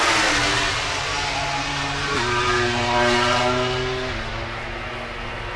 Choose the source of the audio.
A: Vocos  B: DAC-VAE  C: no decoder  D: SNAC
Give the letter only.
C